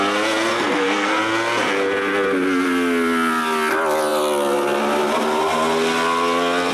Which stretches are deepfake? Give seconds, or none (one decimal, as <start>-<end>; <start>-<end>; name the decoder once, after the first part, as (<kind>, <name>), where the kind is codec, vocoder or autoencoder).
0.5-1.2 (codec, SNAC)

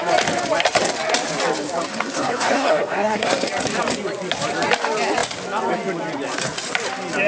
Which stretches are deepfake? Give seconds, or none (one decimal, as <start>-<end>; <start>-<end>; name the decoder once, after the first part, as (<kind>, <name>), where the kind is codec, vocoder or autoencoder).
1.9-3.5 (codec, SNAC)

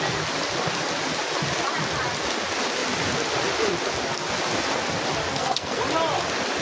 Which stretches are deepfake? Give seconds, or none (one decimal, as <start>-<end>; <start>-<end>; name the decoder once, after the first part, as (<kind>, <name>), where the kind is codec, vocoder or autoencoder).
5.3-5.8 (codec, SNAC)

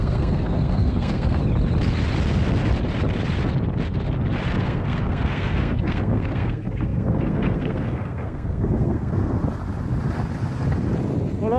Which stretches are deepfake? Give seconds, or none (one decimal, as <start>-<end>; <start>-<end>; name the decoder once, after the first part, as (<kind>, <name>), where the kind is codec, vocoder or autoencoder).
0.0-1.4 (codec, SNAC); 4.6-9.4

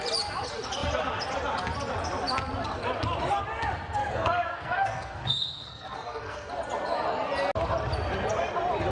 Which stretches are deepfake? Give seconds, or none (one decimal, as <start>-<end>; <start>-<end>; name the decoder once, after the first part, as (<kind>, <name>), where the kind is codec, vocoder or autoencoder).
4.0-6.5 (codec, SNAC)

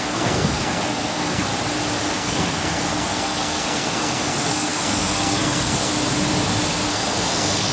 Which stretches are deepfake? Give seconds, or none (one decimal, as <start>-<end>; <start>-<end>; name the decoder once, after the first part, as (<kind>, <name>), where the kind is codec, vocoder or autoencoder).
0.0-1.5 (codec, SNAC); 2.1-5.9; 6.9-7.7

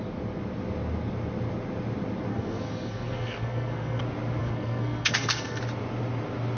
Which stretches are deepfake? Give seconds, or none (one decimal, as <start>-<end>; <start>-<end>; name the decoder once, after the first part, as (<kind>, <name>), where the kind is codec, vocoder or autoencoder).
2.3-4.0 (codec, SNAC); 4.4-5.6